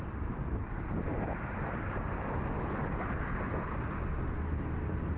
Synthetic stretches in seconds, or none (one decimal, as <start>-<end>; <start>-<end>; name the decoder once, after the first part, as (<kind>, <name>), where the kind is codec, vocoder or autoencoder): none